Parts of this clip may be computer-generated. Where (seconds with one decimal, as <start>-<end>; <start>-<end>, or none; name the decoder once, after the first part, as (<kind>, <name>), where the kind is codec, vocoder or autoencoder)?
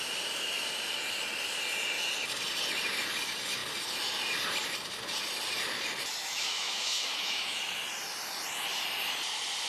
6.2-7.6 (autoencoder, DAC-VAE)